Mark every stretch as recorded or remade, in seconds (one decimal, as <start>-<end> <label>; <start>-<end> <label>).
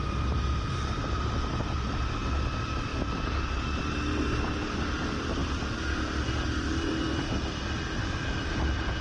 0.0-9.0 remade